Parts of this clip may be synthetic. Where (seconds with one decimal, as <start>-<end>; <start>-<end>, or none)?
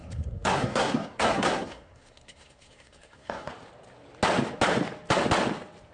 0.0-3.5